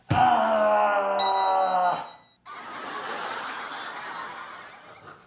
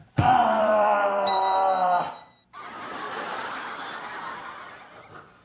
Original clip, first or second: first